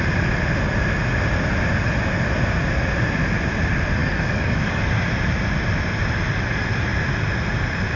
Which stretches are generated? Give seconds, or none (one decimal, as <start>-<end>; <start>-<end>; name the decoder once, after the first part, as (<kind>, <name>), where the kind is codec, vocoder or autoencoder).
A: 4.0-4.8 (codec, DAC)